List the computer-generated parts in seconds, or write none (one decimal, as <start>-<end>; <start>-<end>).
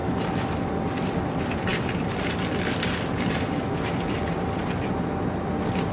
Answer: none